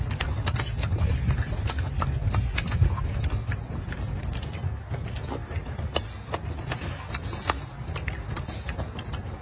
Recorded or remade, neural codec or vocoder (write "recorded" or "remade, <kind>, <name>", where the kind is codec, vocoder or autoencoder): recorded